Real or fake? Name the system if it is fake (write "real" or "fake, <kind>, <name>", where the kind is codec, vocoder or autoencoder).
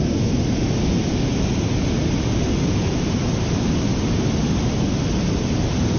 real